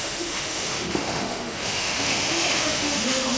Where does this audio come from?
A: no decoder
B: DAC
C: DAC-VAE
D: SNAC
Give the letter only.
C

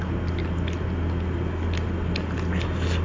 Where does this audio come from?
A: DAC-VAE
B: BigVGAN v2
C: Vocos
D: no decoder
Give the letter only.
D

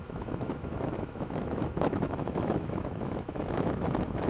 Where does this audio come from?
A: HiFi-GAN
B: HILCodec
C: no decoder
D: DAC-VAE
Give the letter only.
D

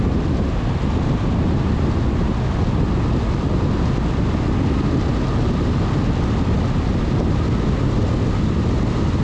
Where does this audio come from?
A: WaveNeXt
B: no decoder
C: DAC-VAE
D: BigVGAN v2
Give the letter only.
B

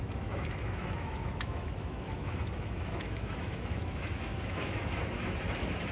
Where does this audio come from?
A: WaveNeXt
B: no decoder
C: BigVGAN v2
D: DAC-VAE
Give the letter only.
D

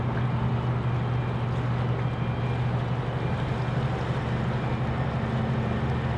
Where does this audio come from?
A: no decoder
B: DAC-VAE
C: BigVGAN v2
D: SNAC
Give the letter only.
A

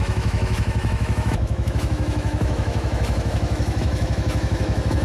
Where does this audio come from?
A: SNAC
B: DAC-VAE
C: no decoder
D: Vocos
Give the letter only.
B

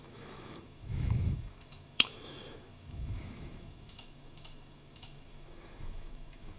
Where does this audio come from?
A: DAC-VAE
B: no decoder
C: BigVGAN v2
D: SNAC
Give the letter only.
A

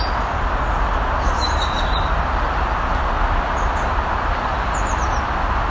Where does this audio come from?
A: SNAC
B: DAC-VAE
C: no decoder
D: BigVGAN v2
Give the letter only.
C